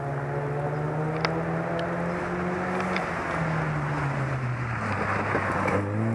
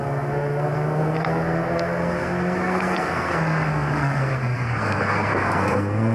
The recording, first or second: first